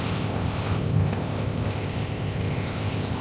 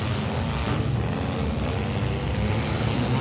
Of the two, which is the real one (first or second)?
second